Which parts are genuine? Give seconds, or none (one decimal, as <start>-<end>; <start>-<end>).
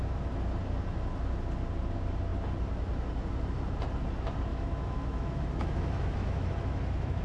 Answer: 0.0-4.5